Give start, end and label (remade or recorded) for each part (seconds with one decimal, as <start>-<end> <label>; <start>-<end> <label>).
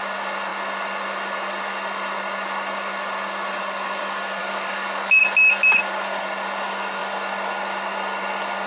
0.0-4.4 recorded; 4.4-5.2 remade; 5.2-8.7 recorded